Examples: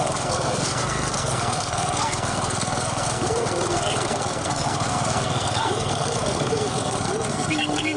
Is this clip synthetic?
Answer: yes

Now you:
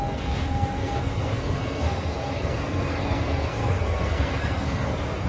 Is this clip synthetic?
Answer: yes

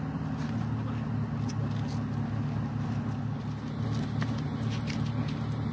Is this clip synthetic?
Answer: no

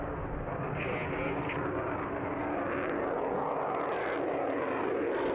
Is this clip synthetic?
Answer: no